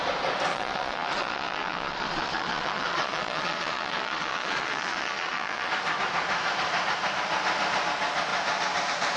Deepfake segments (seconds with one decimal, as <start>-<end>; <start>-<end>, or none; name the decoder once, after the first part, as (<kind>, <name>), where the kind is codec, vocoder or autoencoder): 0.5-5.7 (vocoder, Vocos)